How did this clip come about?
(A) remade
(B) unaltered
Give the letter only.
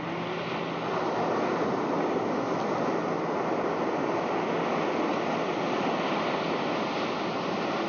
B